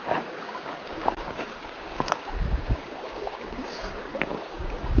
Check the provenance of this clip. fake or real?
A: fake